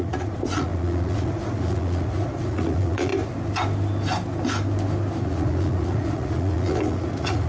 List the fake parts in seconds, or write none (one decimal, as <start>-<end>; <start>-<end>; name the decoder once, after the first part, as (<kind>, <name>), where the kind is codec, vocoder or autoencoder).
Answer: 0.0-3.1 (vocoder, Vocos); 5.2-7.5